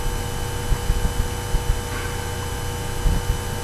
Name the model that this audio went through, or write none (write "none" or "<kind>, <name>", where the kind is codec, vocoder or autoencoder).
none